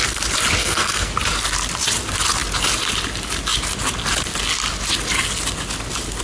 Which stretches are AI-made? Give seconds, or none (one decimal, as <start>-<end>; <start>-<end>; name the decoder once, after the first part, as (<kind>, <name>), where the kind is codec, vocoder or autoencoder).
0.6-1.1 (codec, SNAC)